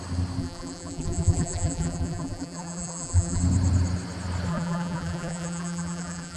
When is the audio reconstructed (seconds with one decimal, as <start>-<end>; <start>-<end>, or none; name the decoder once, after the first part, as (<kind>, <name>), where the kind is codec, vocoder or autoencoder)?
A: 0.4-3.4 (vocoder, BigVGAN v2); 4.5-6.4